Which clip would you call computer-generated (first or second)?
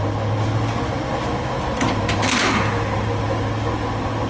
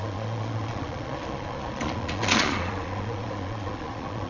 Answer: second